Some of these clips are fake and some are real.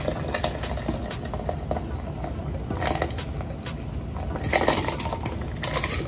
real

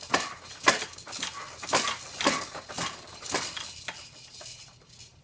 real